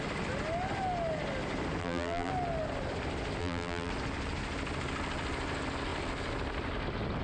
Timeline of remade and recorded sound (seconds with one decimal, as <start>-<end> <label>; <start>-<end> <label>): 0.0-1.8 recorded; 1.8-2.3 remade; 2.3-3.4 recorded; 3.4-3.9 remade; 3.9-7.2 recorded